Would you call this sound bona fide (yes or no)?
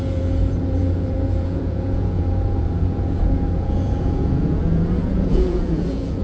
no